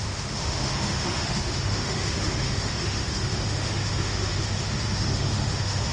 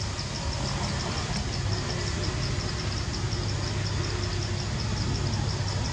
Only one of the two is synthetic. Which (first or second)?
first